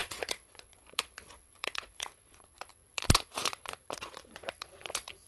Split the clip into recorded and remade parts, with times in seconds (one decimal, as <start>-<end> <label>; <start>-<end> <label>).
0.0-5.3 remade